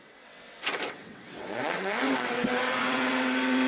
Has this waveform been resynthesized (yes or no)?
yes